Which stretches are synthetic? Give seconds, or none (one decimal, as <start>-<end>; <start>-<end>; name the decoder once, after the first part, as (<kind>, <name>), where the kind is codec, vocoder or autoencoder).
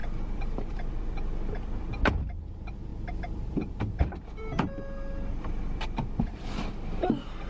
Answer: 0.0-2.1 (vocoder, BigVGAN v2); 2.9-7.5